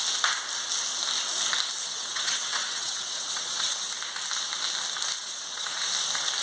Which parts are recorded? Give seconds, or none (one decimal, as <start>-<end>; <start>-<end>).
0.0-1.8; 3.9-5.2; 5.9-6.4